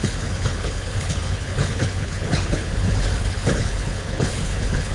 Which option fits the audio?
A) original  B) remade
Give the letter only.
B